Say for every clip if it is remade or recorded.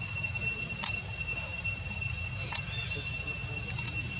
recorded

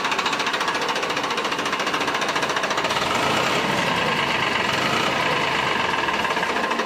recorded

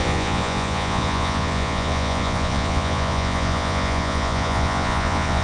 remade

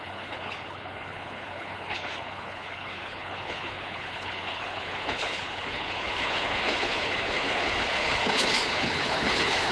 remade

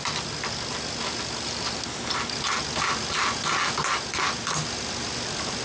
recorded